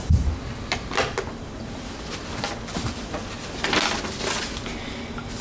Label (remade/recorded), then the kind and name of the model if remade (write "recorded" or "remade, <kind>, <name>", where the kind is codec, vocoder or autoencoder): recorded